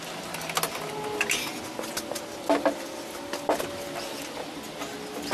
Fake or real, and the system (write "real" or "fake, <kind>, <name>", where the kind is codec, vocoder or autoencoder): real